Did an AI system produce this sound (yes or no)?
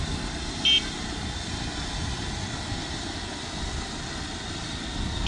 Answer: no